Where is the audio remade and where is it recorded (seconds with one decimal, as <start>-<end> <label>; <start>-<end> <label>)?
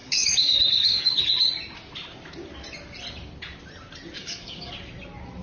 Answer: 0.0-1.2 remade; 1.2-4.2 recorded; 4.2-4.7 remade; 4.7-5.4 recorded